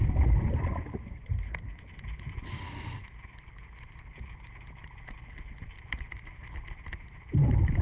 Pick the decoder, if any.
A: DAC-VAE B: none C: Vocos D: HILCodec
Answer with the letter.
B